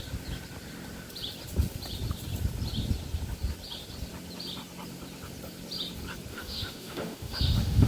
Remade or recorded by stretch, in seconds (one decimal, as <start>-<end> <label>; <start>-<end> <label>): 0.0-6.3 recorded; 6.3-7.9 remade